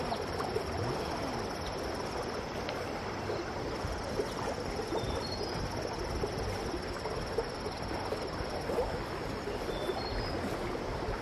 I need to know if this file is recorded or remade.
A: recorded